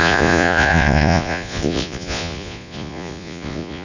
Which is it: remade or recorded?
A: remade